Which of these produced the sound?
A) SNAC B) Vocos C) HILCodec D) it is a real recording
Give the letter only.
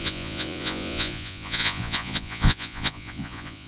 B